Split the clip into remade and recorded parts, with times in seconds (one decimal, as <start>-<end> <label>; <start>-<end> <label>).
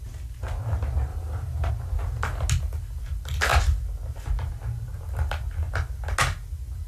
0.0-1.1 recorded; 1.1-1.7 remade; 1.7-6.9 recorded